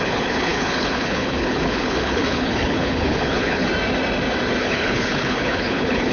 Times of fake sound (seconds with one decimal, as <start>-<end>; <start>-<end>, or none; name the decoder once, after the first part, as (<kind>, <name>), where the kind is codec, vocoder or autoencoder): 0.0-3.7 (codec, HILCodec); 4.6-6.1